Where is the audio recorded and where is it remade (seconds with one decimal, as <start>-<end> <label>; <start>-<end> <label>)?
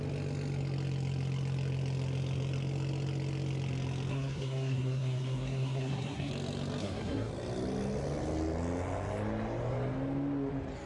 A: 0.0-4.1 recorded; 4.1-6.3 remade; 6.3-6.8 recorded; 6.8-7.3 remade; 7.3-10.9 recorded